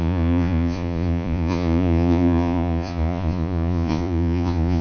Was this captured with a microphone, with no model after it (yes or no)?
no